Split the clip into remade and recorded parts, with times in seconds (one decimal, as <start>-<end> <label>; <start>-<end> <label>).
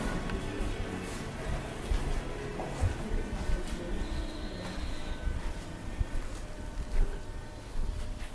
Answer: 0.0-8.3 recorded